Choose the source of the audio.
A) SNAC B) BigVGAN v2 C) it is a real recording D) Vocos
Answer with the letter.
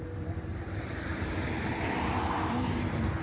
B